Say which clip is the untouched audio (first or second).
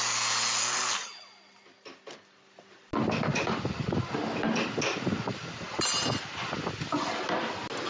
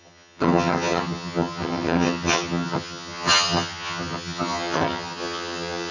first